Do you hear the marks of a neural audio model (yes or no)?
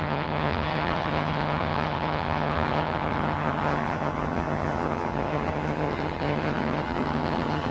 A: yes